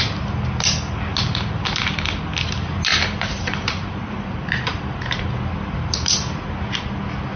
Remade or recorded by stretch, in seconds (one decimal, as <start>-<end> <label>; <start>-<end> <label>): 0.0-2.9 recorded; 2.9-5.3 remade; 5.3-7.4 recorded